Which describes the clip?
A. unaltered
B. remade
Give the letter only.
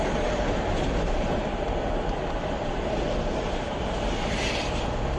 B